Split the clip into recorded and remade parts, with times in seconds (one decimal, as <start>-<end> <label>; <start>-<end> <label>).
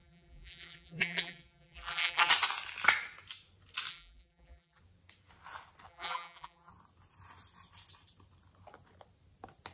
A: 0.0-2.3 remade; 2.3-3.9 recorded; 3.9-4.8 remade; 4.8-5.9 recorded; 5.9-6.7 remade; 6.7-9.7 recorded